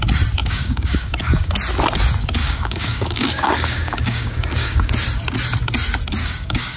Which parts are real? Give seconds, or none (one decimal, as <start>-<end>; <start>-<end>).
0.0-0.4; 1.5-2.4; 4.9-6.2